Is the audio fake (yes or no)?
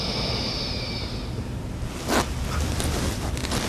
no